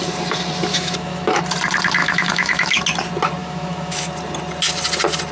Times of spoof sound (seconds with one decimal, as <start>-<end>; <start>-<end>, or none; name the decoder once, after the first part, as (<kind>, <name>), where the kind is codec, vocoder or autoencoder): 0.7-1.4 (autoencoder, DAC-VAE); 2.0-2.8; 3.4-4.1